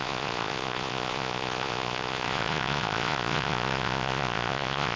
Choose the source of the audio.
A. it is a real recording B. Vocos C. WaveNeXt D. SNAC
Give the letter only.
B